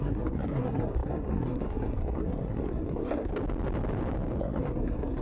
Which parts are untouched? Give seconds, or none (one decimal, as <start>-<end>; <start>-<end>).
3.3-4.4